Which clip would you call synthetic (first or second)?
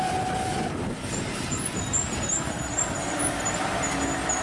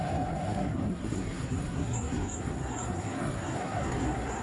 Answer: second